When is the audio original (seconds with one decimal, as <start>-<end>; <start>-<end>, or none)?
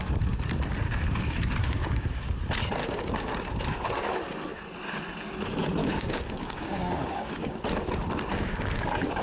0.0-1.6; 2.1-2.8; 3.3-5.8; 7.6-8.3